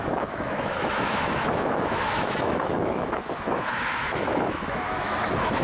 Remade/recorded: remade